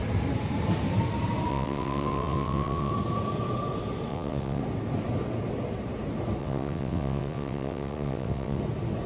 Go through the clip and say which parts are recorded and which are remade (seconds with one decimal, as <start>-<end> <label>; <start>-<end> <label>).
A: 0.0-1.5 recorded; 1.5-2.9 remade; 2.9-4.1 recorded; 4.1-4.6 remade; 4.6-6.4 recorded; 6.4-8.6 remade; 8.6-9.1 recorded